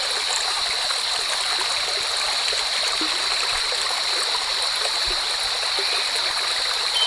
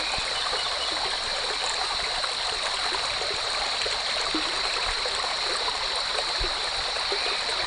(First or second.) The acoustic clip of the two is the first